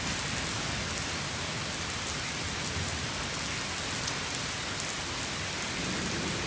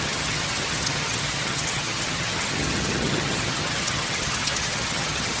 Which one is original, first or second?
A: first